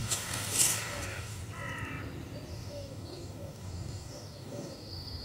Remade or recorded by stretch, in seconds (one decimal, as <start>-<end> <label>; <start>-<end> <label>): 0.0-1.4 remade; 1.4-2.5 recorded; 2.5-5.2 remade